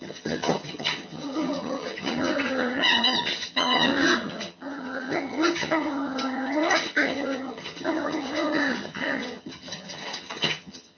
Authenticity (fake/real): fake